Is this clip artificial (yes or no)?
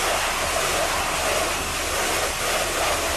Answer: no